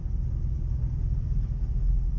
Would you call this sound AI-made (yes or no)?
no